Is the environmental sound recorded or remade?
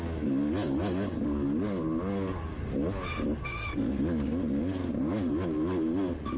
recorded